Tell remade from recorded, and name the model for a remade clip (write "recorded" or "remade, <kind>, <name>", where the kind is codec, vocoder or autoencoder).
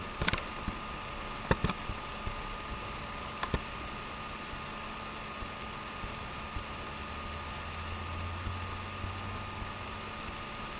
recorded